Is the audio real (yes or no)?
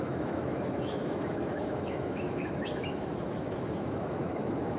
no